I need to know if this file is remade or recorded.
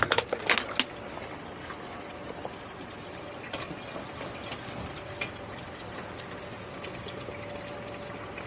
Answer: recorded